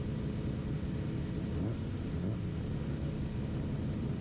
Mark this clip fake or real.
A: real